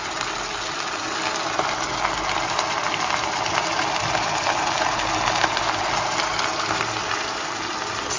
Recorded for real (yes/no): yes